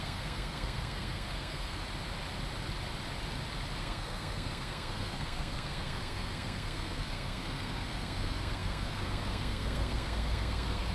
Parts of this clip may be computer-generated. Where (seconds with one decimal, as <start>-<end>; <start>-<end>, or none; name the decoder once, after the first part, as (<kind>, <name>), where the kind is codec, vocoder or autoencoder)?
0.0-1.8 (codec, SNAC); 3.8-10.9